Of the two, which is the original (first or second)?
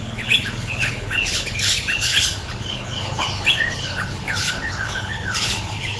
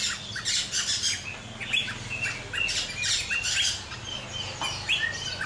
second